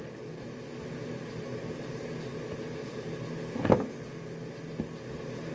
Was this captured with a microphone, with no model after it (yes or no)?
yes